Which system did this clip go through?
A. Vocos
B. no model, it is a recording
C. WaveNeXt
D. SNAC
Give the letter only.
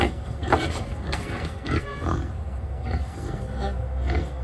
D